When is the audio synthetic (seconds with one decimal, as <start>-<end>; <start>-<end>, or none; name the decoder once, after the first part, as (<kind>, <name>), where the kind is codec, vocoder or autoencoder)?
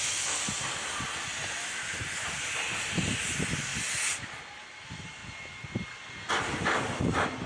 0.0-1.3 (vocoder, BigVGAN v2); 3.2-3.7; 4.5-7.5